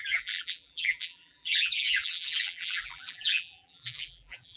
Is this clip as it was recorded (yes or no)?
no